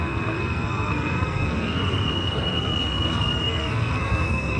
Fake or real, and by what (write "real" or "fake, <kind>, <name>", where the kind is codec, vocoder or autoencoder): fake, codec, SNAC